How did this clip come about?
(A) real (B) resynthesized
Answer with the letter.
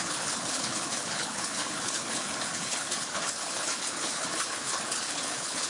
B